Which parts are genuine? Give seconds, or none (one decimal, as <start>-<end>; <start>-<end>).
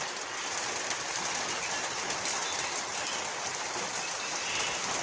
0.0-5.0